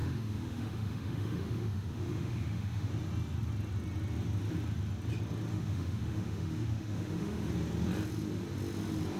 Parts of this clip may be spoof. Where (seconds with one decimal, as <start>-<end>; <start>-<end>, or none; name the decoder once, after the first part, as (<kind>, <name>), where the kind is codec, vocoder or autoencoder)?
0.0-2.9 (autoencoder, DAC-VAE); 5.5-7.5